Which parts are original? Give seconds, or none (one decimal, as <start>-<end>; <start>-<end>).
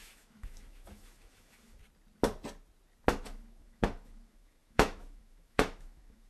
1.8-3.1